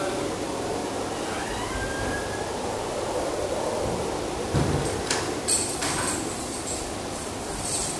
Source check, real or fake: real